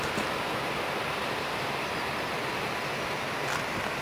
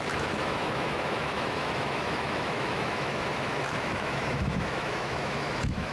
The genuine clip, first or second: first